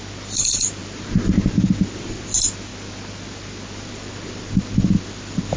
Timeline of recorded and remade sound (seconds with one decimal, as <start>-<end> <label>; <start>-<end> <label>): 0.0-5.6 recorded

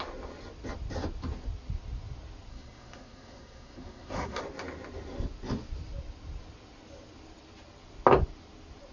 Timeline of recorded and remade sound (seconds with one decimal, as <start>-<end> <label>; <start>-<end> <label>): 0.0-2.5 recorded; 2.5-4.4 remade; 4.4-8.9 recorded

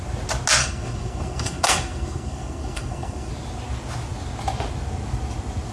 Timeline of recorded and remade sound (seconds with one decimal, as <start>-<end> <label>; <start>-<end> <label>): 0.0-0.6 recorded; 0.6-3.3 remade; 3.3-5.7 recorded

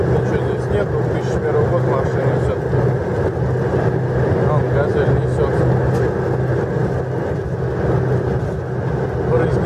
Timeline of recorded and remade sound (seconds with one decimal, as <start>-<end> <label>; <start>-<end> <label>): 0.0-9.7 recorded

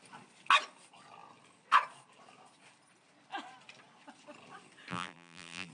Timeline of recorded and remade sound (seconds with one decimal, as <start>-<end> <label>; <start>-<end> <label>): 0.0-4.9 recorded; 4.9-5.7 remade

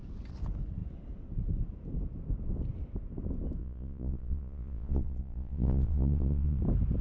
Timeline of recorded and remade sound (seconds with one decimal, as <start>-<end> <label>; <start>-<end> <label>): 0.0-3.6 recorded; 3.6-6.6 remade; 6.6-7.0 recorded